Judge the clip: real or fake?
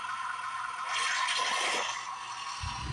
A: real